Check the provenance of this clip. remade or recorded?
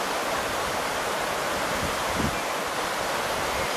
recorded